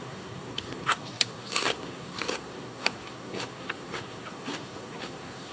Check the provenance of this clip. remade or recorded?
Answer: remade